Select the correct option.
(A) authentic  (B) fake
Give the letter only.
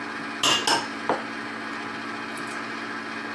A